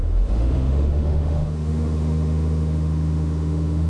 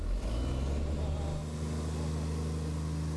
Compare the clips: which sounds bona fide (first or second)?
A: second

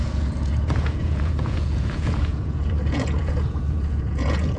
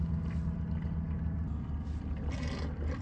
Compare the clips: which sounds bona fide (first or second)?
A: second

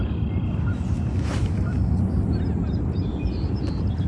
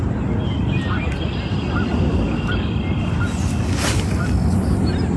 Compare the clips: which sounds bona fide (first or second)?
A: second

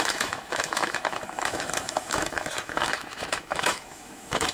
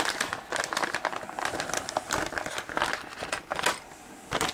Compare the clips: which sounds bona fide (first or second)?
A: second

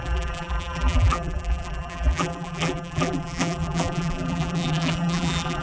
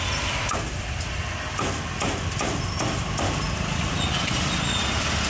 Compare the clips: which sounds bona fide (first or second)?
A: second